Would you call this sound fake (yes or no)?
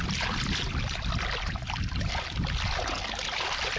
no